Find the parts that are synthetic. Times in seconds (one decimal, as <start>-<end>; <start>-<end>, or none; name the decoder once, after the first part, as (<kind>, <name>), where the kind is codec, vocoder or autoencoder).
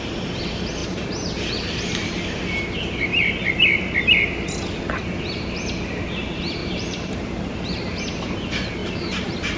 0.8-1.3 (vocoder, BigVGAN v2); 6.6-8.0; 8.8-9.6